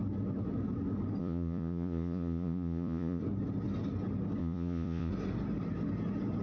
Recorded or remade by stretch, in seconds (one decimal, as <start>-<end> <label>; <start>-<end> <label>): 0.0-1.2 recorded; 1.2-3.2 remade; 3.2-4.4 recorded; 4.4-5.1 remade; 5.1-6.4 recorded